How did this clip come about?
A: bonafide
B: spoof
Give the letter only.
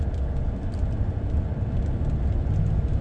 A